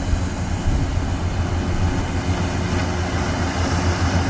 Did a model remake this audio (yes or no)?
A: no